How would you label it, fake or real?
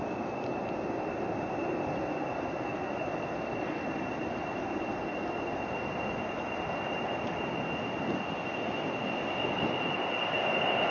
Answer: real